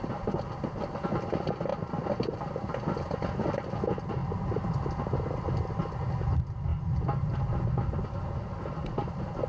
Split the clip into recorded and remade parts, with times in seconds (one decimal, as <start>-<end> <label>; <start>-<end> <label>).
0.0-9.5 recorded